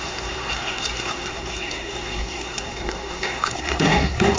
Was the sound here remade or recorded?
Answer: remade